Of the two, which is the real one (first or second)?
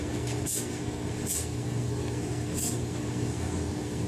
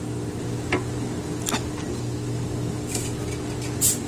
second